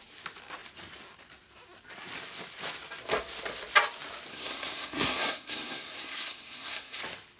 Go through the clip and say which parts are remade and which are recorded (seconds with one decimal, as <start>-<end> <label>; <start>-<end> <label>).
0.0-4.3 recorded; 4.3-7.0 remade; 7.0-7.4 recorded